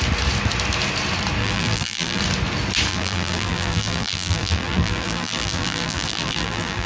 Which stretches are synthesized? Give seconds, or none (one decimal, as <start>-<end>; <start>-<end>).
1.4-2.2; 2.9-6.9